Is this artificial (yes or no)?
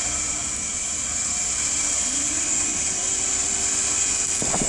no